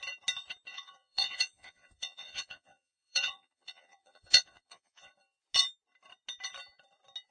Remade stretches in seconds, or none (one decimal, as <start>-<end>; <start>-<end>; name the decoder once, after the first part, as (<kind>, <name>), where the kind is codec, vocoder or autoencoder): 0.7-5.1 (vocoder, Vocos)